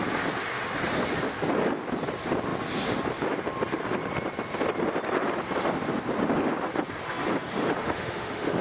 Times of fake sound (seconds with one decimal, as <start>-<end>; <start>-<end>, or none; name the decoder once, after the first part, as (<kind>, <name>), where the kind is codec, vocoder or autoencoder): 7.8-8.6 (autoencoder, DAC-VAE)